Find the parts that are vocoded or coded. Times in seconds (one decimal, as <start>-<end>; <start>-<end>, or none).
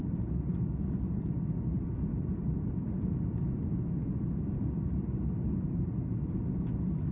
none